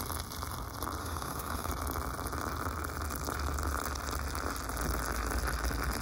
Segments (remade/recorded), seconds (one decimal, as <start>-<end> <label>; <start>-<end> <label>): 0.0-1.0 recorded; 1.0-1.7 remade; 1.7-6.0 recorded